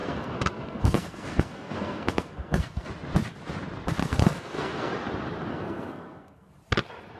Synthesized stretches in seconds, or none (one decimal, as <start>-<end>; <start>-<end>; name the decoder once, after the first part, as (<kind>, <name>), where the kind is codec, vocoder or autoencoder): 0.0-2.9 (codec, SNAC); 4.0-4.9; 5.5-6.5